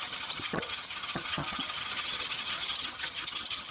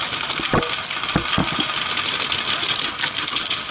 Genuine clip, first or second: second